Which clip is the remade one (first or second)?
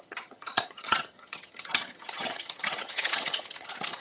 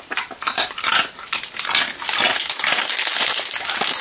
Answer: first